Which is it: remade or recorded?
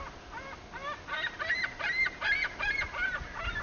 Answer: recorded